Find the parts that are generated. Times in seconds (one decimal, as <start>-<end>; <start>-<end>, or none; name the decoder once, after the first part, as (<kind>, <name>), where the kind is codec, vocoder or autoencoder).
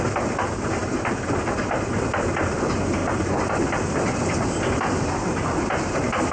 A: none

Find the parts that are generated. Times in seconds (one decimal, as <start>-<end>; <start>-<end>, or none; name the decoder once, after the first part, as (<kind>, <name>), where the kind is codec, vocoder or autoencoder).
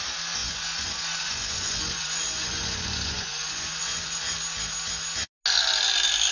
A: 0.4-4.2 (vocoder, Vocos)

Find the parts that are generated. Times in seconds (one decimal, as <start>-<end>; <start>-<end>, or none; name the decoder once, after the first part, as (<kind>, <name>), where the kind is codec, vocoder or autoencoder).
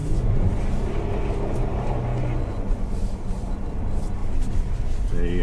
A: 0.0-0.5 (vocoder, Vocos); 2.1-2.9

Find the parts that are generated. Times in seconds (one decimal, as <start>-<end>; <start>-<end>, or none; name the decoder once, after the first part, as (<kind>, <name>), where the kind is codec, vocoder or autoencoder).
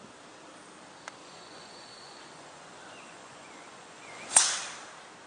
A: 1.2-4.4 (vocoder, Vocos)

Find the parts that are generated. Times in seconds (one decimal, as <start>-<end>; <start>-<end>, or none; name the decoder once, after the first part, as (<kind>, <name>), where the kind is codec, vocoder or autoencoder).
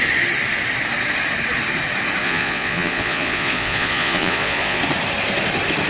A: 2.2-4.8 (vocoder, Vocos)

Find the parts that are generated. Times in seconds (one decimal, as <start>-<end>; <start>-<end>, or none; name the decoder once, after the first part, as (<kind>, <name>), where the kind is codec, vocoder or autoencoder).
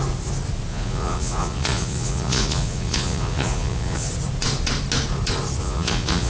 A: 0.7-4.1 (vocoder, Vocos); 5.6-6.3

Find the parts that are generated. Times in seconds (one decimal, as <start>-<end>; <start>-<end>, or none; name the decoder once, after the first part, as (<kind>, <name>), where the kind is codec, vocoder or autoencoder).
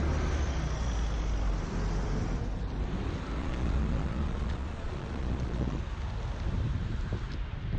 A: 3.4-5.8 (vocoder, Vocos)